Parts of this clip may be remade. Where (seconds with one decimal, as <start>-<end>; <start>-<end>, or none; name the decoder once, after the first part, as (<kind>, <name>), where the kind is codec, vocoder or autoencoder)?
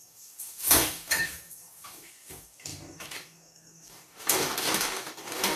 0.0-5.6 (codec, DAC)